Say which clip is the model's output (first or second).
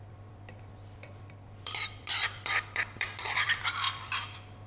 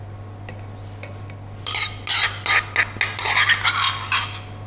first